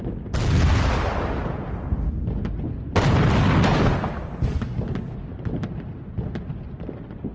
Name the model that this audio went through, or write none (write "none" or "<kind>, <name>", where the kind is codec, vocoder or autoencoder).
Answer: none